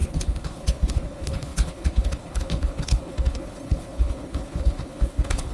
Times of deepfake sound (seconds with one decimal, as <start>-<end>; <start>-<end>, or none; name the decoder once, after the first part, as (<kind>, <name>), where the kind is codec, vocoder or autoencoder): 0.0-5.5 (codec, HILCodec)